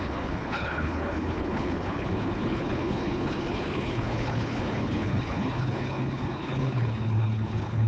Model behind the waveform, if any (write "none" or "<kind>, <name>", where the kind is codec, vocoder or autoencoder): codec, HILCodec